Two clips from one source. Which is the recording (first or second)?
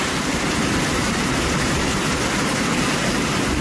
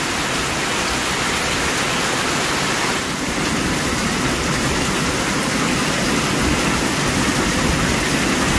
second